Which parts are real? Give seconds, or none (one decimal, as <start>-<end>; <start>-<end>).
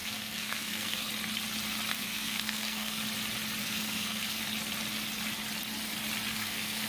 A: 1.1-1.9; 3.0-3.6; 4.4-6.3